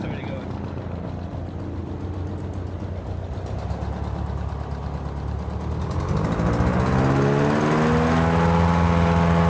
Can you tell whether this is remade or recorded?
recorded